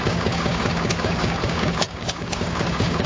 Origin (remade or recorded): remade